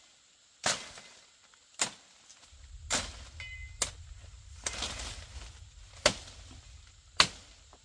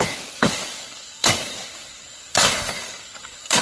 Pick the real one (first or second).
first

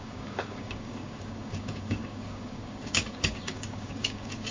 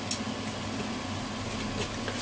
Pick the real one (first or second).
second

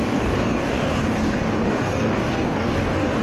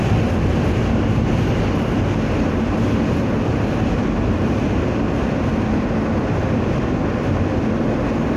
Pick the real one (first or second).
second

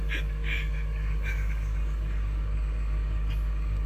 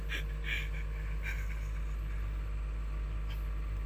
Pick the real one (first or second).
second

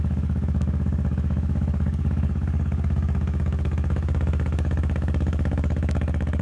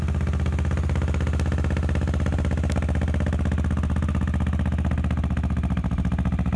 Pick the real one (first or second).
second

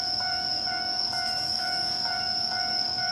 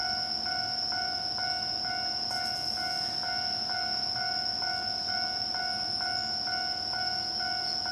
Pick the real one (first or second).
second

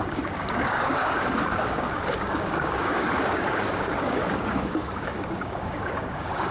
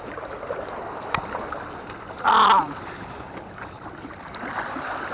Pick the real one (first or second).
second